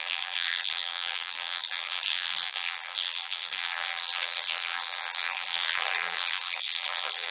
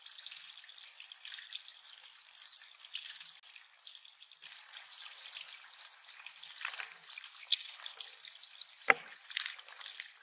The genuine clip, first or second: second